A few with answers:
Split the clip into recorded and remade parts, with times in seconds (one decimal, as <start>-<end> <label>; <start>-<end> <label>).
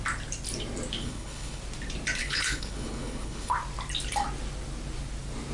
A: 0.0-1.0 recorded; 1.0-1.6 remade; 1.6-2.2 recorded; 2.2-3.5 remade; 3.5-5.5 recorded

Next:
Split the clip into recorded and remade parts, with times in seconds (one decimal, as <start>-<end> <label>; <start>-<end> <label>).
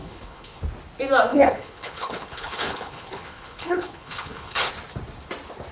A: 0.0-0.6 remade; 0.6-1.3 recorded; 1.3-4.7 remade; 4.7-5.7 recorded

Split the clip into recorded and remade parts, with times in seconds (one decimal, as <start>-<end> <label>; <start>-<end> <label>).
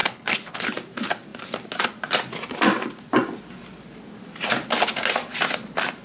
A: 0.0-0.7 remade; 0.7-6.0 recorded